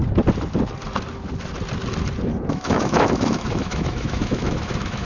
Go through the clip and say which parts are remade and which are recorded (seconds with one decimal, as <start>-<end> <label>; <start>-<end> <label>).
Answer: 0.0-2.5 recorded; 2.5-5.0 remade